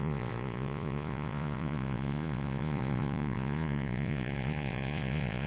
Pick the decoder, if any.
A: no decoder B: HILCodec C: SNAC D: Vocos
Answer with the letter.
D